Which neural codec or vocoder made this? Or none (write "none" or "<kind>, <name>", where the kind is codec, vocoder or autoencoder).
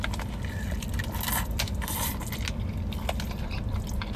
none